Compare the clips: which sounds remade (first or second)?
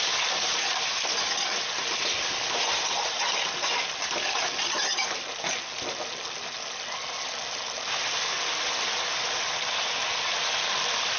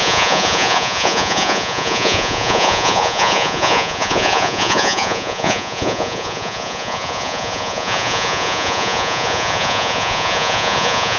second